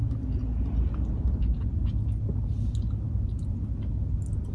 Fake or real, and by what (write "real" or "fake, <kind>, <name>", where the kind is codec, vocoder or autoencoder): real